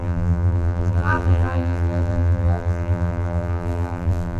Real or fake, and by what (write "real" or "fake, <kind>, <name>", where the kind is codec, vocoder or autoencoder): fake, vocoder, BigVGAN v2